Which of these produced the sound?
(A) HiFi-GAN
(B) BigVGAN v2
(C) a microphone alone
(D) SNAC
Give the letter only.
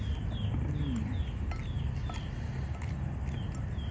C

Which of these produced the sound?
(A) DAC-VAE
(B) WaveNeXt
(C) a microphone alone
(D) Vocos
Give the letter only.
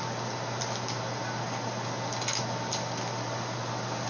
C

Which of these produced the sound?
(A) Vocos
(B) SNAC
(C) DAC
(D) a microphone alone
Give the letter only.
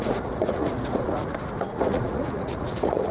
A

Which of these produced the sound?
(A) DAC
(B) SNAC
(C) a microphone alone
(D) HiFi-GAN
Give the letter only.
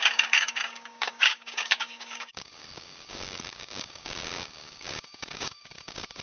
A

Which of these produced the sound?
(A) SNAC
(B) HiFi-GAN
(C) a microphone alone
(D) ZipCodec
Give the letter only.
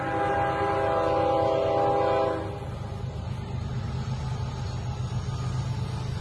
C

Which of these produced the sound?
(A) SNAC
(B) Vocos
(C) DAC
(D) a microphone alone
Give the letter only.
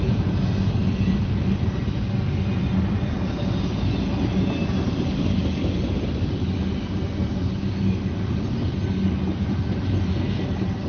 D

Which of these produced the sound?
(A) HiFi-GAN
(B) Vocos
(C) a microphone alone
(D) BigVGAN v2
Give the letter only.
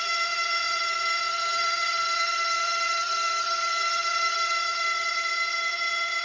A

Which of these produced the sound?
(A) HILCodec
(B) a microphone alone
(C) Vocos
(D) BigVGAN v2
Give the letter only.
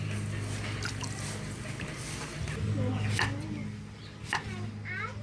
B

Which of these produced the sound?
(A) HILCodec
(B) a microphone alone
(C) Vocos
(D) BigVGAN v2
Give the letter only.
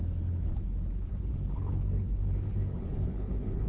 A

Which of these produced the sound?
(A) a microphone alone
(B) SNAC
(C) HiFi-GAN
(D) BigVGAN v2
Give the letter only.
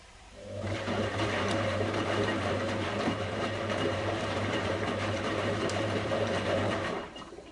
D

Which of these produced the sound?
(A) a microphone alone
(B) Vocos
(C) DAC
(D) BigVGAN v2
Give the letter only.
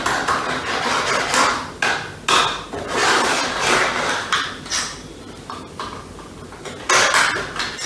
A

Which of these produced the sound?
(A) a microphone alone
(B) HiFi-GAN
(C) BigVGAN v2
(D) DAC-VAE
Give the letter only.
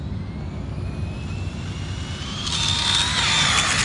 C